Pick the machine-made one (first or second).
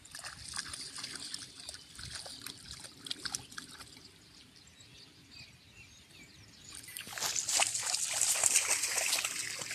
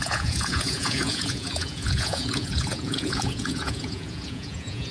second